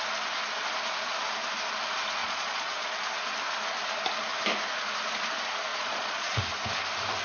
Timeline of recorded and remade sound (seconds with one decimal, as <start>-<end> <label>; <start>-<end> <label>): 0.0-2.2 recorded; 2.2-2.9 remade; 2.9-5.7 recorded; 5.7-6.4 remade; 6.4-7.2 recorded